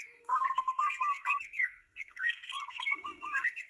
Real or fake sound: fake